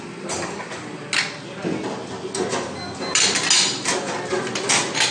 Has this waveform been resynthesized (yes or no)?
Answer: no